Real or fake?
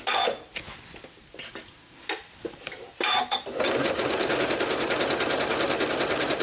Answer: real